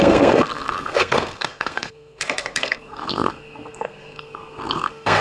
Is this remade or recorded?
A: remade